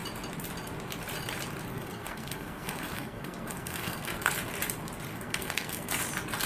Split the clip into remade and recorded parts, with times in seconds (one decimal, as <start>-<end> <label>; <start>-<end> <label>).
0.0-1.7 recorded; 1.7-4.3 remade; 4.3-5.1 recorded; 5.1-5.9 remade; 5.9-6.5 recorded